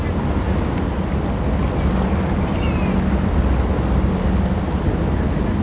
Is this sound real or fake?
real